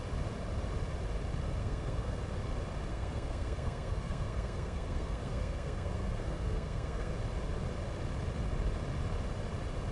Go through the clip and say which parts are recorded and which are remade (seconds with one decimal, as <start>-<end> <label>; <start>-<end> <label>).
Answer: 0.0-1.6 recorded; 1.6-2.2 remade; 2.2-2.9 recorded; 2.9-7.1 remade; 7.1-9.9 recorded